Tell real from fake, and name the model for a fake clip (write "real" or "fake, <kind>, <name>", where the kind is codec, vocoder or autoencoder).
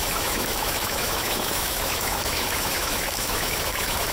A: fake, autoencoder, DAC-VAE